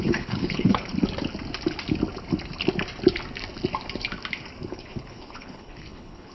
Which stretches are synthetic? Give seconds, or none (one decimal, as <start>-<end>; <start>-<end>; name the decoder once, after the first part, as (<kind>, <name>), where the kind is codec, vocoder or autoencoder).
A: 0.0-0.9 (codec, HILCodec); 4.7-6.3